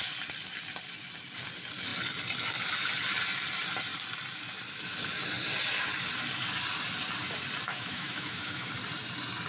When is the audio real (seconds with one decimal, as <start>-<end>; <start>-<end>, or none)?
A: 0.0-7.7; 8.7-9.5